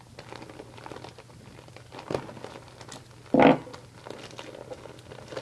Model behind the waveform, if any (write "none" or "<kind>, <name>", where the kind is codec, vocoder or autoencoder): none